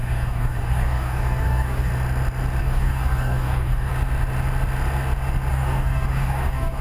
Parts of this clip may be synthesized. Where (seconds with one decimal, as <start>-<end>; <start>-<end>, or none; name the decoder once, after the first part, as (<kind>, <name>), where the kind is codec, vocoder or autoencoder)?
0.0-1.9 (codec, DAC); 2.6-3.9; 5.5-6.8